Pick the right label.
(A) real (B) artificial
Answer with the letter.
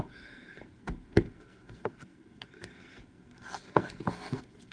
B